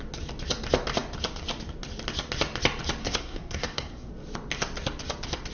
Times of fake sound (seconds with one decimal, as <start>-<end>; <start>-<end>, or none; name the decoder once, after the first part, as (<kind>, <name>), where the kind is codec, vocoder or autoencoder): 3.0-4.1 (codec, SNAC)